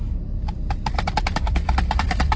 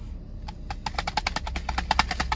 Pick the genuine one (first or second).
second